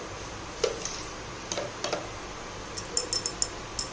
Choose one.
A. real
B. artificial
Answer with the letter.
A